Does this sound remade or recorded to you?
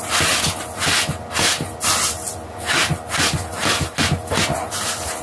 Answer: recorded